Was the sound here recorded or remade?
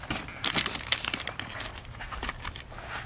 recorded